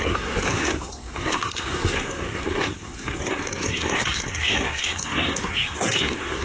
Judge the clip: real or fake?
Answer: fake